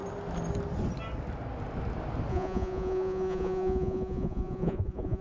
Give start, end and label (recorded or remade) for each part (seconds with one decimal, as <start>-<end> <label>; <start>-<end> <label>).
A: 0.0-2.3 recorded; 2.3-5.2 remade